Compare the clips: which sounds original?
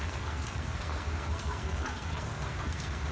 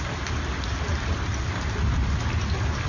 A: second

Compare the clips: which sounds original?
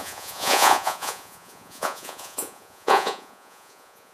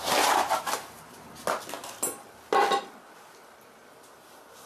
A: second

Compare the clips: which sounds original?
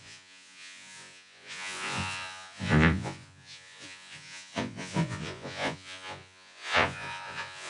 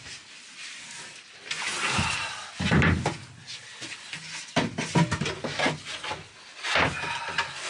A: second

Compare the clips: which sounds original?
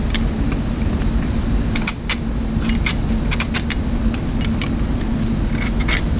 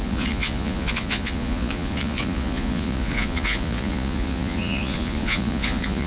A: first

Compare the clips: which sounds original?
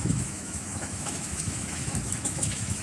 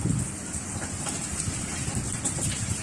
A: second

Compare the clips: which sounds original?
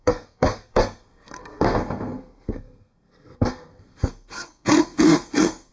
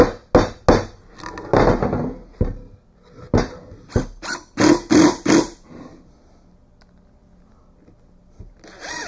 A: second